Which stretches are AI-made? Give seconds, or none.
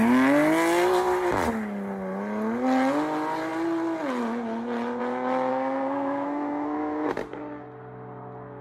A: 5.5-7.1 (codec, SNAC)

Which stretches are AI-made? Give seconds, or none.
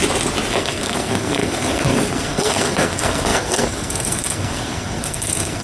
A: 0.5-5.6 (codec, SNAC)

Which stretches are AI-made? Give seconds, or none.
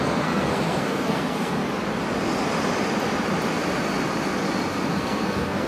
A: 0.0-1.6 (codec, SNAC); 4.9-5.7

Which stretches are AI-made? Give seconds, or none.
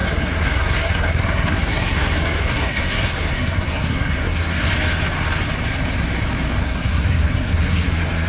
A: 0.0-4.7 (codec, SNAC); 6.6-8.3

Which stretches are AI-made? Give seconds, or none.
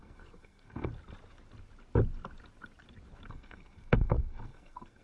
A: 0.0-0.9 (codec, SNAC); 3.3-5.0